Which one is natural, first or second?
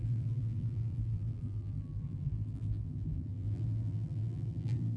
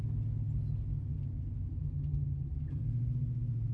second